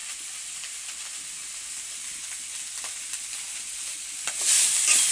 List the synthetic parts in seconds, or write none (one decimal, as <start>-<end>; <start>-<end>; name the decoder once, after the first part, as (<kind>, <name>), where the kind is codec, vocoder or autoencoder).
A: none